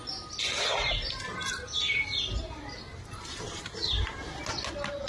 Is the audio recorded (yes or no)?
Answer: yes